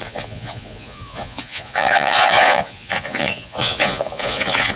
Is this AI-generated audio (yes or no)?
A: yes